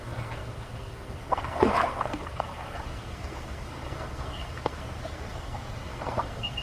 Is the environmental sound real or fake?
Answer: fake